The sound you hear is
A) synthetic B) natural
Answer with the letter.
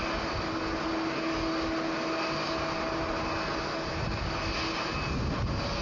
B